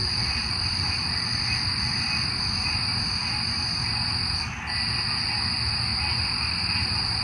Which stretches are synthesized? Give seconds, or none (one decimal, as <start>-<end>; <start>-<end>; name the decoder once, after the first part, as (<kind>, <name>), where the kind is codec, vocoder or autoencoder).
0.0-2.8 (vocoder, BigVGAN v2); 5.9-6.7